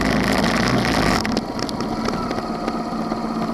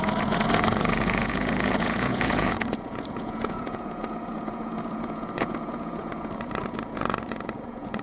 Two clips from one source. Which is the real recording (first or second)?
first